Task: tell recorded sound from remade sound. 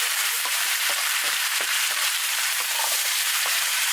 remade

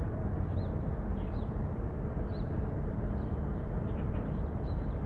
recorded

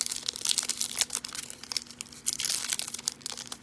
recorded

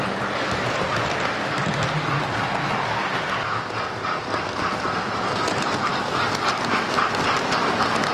recorded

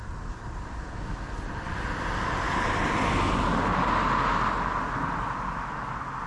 recorded